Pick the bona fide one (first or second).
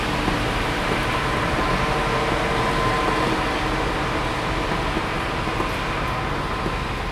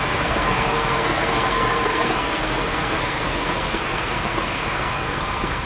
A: first